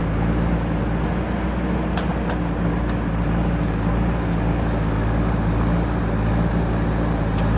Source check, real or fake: real